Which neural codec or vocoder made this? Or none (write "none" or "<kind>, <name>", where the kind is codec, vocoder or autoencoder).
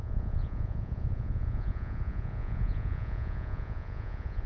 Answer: vocoder, Vocos